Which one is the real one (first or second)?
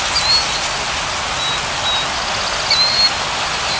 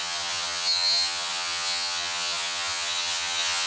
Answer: first